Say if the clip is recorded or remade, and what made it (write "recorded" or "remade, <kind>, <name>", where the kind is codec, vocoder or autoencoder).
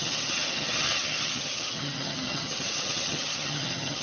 remade, vocoder, HiFi-GAN